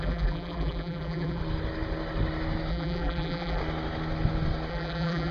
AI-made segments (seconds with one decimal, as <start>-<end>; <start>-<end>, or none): 0.0-1.4; 2.7-3.6; 4.7-5.3